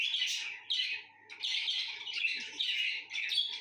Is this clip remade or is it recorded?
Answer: recorded